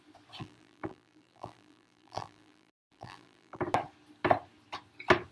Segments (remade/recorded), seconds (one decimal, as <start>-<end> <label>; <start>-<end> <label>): 0.0-0.4 recorded; 0.4-3.6 remade; 3.6-5.3 recorded